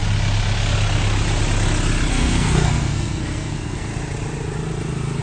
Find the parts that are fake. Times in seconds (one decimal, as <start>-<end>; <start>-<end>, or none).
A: 2.1-3.9